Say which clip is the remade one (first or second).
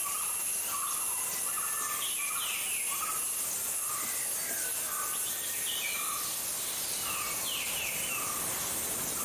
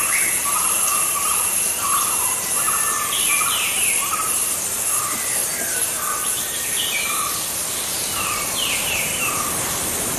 second